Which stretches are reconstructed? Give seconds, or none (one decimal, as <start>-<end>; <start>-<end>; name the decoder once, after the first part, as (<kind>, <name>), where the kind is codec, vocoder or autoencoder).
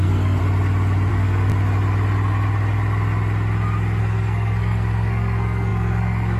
0.0-0.4 (codec, SNAC); 1.1-1.5; 4.0-6.4